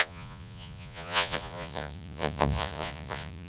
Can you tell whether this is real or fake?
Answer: fake